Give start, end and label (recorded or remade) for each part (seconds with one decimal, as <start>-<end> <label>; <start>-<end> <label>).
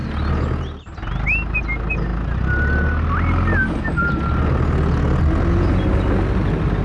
0.0-6.8 recorded